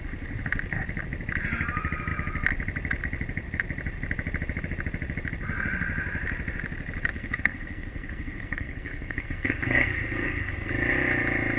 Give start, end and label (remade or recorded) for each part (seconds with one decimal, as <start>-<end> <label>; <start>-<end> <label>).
0.0-7.1 recorded; 7.1-10.7 remade; 10.7-11.6 recorded